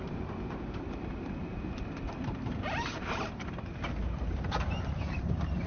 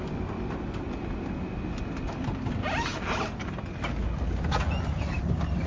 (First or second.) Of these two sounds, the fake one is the first